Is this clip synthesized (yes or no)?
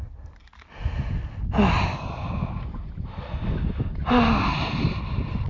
no